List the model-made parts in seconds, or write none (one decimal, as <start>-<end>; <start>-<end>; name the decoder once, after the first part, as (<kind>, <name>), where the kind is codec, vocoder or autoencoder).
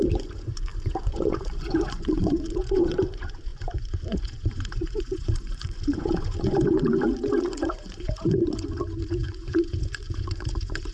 0.0-10.9 (vocoder, Vocos)